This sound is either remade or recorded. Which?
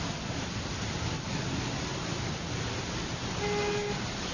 recorded